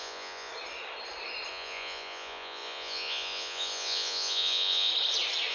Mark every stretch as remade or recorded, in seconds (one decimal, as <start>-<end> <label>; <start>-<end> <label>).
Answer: 0.0-0.5 remade; 0.5-1.5 recorded; 1.5-4.9 remade; 4.9-5.5 recorded